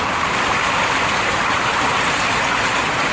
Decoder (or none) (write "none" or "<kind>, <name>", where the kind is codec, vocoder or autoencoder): none